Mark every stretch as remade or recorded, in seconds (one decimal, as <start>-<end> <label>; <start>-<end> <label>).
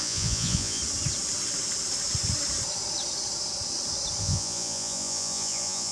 0.0-0.8 remade; 0.8-4.2 recorded; 4.2-5.9 remade